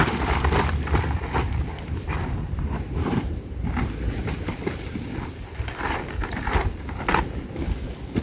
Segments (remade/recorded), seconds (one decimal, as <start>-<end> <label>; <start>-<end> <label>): 0.0-4.9 remade; 4.9-8.2 recorded